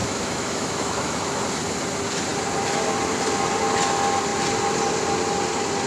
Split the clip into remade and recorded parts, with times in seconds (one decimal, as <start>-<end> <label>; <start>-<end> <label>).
0.0-1.4 remade; 1.4-5.9 recorded